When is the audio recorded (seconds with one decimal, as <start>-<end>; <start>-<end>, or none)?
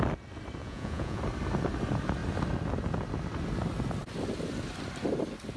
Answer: 0.0-0.6; 1.2-5.6